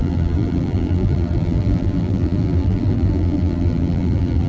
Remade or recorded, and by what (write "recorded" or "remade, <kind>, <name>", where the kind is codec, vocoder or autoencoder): remade, vocoder, BigVGAN v2